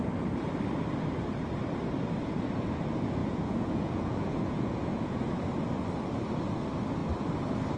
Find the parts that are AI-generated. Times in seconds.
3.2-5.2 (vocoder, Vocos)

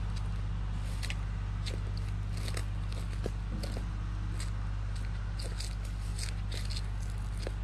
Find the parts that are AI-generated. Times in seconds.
none

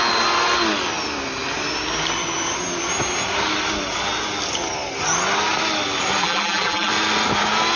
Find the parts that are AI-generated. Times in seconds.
6.2-6.9 (vocoder, BigVGAN v2)